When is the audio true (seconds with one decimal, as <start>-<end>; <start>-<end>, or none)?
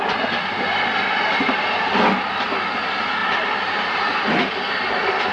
0.0-3.2; 4.1-5.3